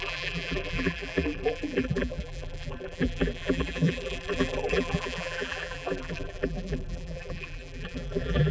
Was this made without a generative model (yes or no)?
no